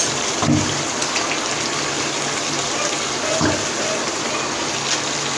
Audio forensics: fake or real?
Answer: real